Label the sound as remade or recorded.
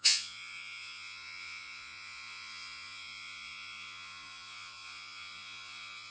remade